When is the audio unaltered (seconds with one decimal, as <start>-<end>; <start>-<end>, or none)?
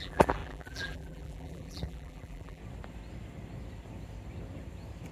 2.6-5.1